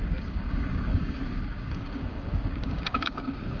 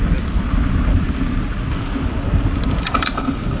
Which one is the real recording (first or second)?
second